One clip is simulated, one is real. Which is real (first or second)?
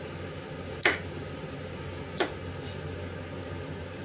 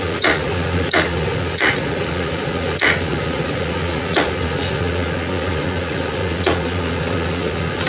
first